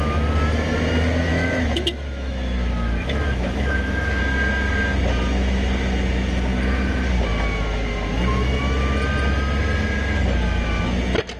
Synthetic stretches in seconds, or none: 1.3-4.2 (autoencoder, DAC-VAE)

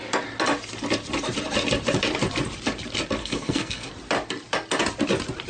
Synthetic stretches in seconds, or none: 3.2-3.9 (codec, SNAC)